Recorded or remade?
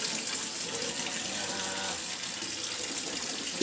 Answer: recorded